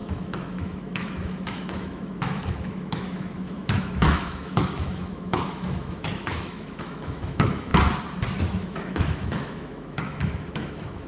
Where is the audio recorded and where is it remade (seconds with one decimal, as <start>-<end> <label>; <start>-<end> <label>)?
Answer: 0.0-7.7 remade; 7.7-8.4 recorded; 8.4-11.1 remade